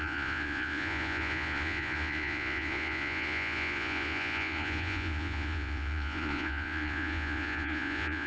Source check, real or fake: fake